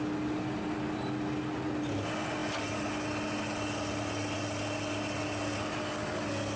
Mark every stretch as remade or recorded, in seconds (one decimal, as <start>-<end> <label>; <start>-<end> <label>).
0.0-6.6 recorded